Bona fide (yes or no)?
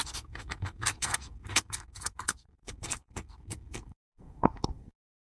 no